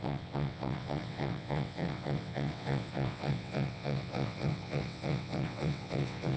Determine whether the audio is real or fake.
fake